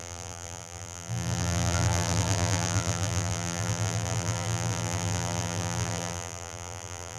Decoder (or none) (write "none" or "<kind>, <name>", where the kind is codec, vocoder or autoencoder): vocoder, BigVGAN v2